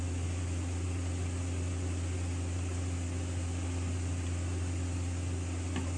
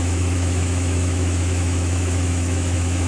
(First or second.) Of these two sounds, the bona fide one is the first